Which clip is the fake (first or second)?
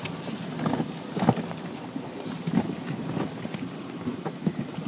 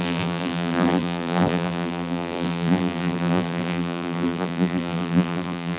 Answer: second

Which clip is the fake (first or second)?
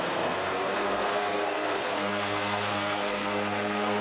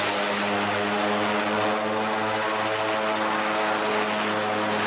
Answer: first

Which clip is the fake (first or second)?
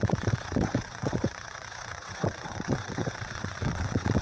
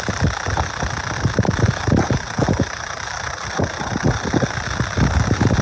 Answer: first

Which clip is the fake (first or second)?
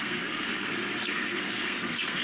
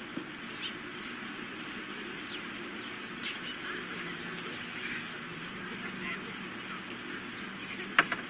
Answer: first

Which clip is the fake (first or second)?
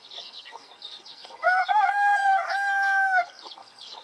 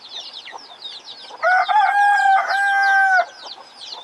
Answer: first